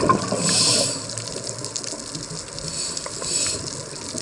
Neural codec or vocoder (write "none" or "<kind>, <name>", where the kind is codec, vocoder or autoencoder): none